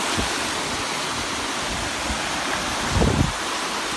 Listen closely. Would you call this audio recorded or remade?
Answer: recorded